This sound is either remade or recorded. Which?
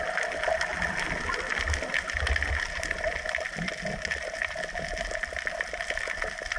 recorded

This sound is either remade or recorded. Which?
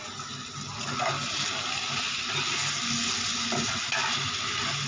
recorded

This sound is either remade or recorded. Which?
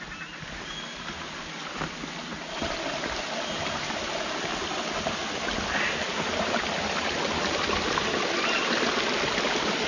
recorded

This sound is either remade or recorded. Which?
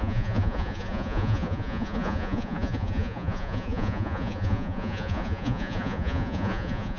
remade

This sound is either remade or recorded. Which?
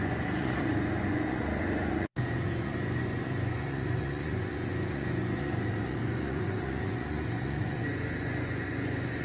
remade